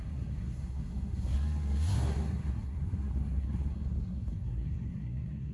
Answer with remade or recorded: remade